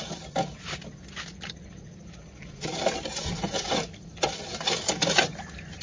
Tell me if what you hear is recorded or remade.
recorded